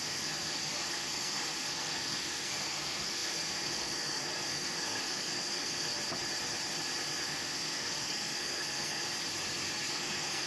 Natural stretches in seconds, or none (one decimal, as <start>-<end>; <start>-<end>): 5.9-7.2; 9.0-9.9